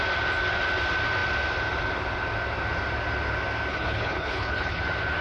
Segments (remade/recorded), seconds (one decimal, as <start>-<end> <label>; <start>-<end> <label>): 0.0-3.7 recorded; 3.7-4.8 remade; 4.8-5.2 recorded